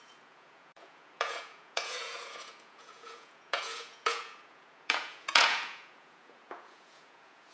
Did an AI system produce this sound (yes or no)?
yes